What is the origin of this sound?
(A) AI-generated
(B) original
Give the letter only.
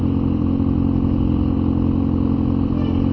B